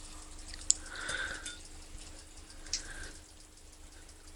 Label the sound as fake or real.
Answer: real